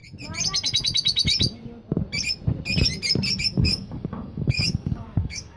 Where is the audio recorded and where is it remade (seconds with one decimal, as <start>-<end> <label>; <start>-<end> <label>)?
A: 0.0-3.4 recorded; 3.4-5.6 remade